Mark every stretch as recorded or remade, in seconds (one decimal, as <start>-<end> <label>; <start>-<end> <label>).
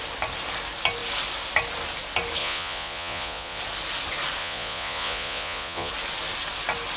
0.0-2.4 recorded; 2.4-3.6 remade; 3.6-4.4 recorded; 4.4-5.9 remade; 5.9-7.0 recorded